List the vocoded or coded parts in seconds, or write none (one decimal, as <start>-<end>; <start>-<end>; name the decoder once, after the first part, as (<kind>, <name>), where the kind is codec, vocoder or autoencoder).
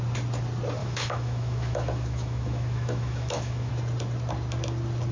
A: 0.8-3.7 (autoencoder, DAC-VAE)